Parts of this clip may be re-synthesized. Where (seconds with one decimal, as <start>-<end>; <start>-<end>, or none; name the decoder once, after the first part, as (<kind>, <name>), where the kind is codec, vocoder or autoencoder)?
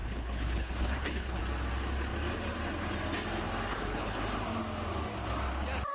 0.0-1.4 (codec, HILCodec); 3.7-4.2